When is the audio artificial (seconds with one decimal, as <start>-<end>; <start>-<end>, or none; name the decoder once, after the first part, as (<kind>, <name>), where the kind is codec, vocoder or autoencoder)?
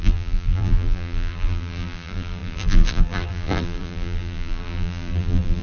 0.0-5.6 (vocoder, BigVGAN v2)